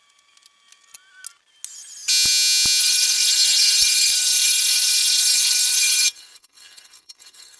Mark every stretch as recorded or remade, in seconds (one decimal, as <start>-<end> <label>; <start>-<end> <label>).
0.0-2.8 recorded; 2.8-7.6 remade